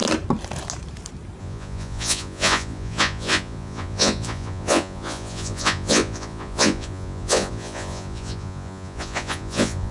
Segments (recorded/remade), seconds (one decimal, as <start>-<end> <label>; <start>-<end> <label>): 0.0-1.4 recorded; 1.4-9.9 remade